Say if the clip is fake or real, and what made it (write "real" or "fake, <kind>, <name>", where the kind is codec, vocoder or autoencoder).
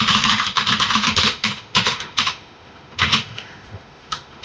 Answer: fake, autoencoder, DAC-VAE